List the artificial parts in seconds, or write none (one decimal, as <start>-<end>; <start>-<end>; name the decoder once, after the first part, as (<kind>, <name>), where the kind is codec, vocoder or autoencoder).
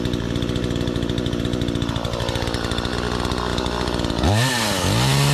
none